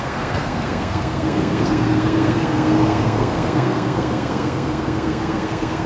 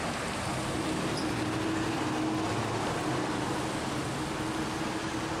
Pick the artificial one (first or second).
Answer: first